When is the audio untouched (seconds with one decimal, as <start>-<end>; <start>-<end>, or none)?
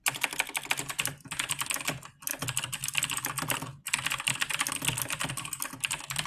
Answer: 0.0-6.3